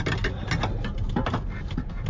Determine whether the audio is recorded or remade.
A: recorded